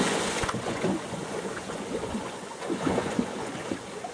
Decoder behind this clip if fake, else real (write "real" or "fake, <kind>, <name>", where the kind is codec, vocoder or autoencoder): fake, vocoder, Vocos